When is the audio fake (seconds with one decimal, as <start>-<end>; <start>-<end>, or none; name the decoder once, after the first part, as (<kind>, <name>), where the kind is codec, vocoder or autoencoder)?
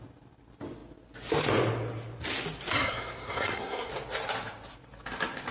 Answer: 2.7-3.9 (codec, SNAC)